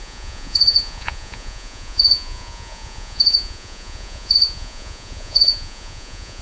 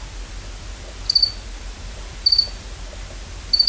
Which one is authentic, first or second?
second